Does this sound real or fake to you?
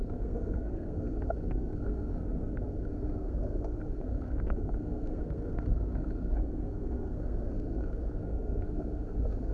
fake